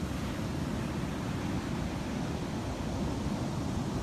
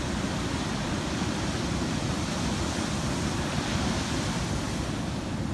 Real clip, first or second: first